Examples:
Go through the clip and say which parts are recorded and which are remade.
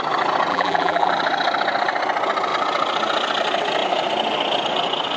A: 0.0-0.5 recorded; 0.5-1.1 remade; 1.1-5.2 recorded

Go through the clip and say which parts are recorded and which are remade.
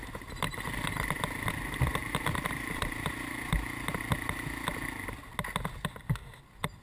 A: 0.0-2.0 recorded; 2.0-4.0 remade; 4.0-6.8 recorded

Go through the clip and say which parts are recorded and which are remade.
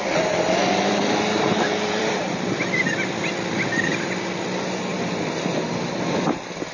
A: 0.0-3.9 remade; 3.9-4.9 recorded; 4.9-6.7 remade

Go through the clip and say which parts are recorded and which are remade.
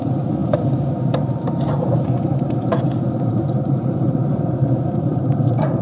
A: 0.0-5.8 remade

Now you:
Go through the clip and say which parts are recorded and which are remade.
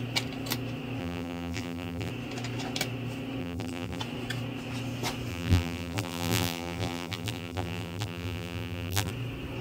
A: 0.0-1.0 recorded; 1.0-2.1 remade; 2.1-3.4 recorded; 3.4-4.0 remade; 4.0-5.3 recorded; 5.3-9.1 remade; 9.1-9.6 recorded